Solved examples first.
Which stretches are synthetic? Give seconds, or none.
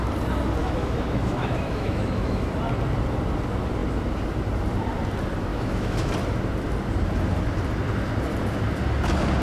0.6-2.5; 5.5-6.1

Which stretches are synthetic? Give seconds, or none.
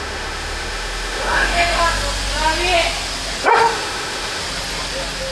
0.0-1.8; 3.6-4.4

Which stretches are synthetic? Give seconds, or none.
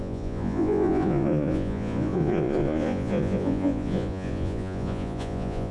0.0-5.7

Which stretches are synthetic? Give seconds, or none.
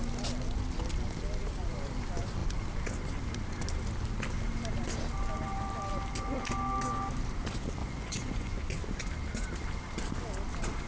7.8-8.6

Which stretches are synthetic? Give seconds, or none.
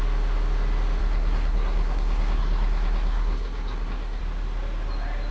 1.0-4.2